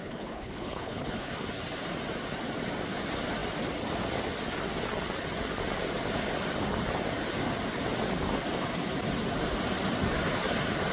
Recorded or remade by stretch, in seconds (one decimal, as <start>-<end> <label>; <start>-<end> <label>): 0.0-1.3 remade; 1.3-10.9 recorded